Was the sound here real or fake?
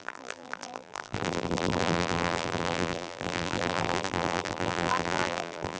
fake